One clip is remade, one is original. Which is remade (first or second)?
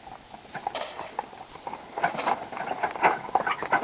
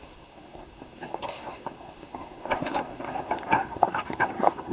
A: second